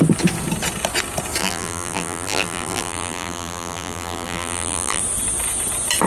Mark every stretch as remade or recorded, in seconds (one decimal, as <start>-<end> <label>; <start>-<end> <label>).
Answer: 0.0-1.4 recorded; 1.4-5.0 remade; 5.0-6.1 recorded